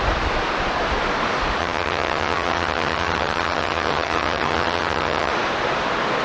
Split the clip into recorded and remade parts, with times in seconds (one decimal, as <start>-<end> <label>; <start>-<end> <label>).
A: 0.0-1.6 recorded; 1.6-5.3 remade; 5.3-6.2 recorded